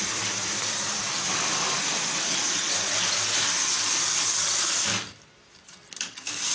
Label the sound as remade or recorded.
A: recorded